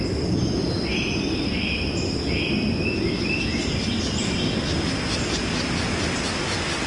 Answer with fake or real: real